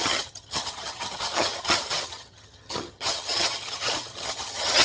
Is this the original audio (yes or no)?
no